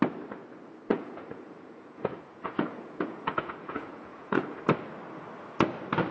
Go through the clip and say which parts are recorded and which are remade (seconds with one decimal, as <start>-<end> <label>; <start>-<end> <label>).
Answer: 0.0-0.9 recorded; 0.9-4.6 remade; 4.6-6.1 recorded